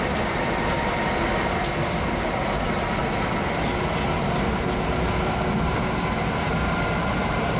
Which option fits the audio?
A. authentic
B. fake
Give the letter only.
A